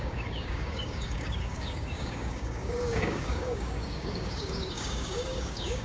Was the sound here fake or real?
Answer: fake